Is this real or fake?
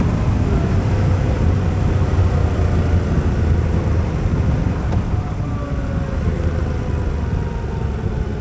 real